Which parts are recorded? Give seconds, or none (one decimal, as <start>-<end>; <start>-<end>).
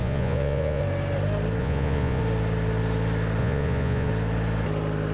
0.8-1.6; 2.2-3.4; 4.1-5.1